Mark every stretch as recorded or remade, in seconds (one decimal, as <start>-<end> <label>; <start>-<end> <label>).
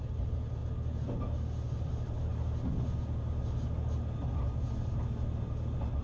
0.0-6.0 recorded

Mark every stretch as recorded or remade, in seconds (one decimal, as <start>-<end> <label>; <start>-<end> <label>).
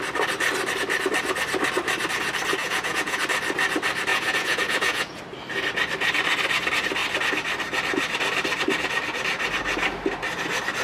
0.0-2.6 recorded; 2.6-3.2 remade; 3.2-4.1 recorded; 4.1-5.2 remade; 5.2-10.8 recorded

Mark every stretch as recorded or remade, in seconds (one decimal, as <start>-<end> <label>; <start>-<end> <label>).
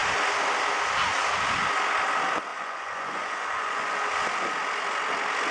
0.0-2.5 recorded; 2.5-4.1 remade; 4.1-5.5 recorded